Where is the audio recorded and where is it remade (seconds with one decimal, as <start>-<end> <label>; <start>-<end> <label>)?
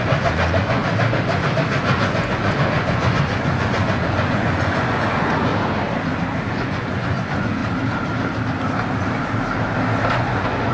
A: 0.0-0.8 remade; 0.8-1.7 recorded; 1.7-5.5 remade; 5.5-6.5 recorded; 6.5-7.6 remade; 7.6-10.1 recorded; 10.1-10.7 remade